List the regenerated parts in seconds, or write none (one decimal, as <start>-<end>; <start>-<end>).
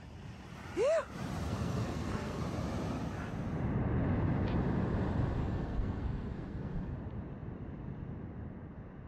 1.4-2.4; 5.4-6.9